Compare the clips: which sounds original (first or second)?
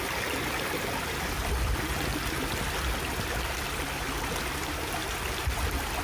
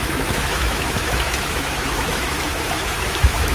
first